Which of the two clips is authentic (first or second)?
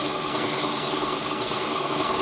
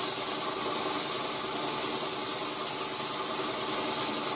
second